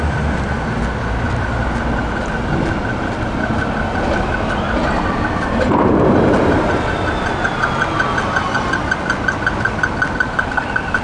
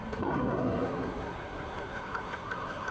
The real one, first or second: first